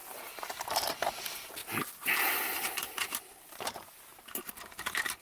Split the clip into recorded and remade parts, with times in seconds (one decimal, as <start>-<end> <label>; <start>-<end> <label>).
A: 0.0-0.7 recorded; 0.7-1.6 remade; 1.6-2.4 recorded; 2.4-4.1 remade; 4.1-5.2 recorded